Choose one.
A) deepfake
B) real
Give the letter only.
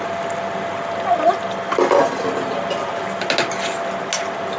B